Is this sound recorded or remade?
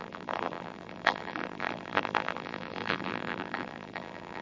remade